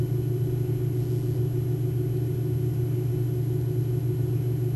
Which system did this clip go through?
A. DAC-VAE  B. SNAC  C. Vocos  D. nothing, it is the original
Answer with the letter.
D